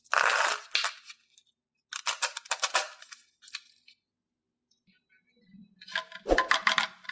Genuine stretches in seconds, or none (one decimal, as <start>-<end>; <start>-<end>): 0.0-7.1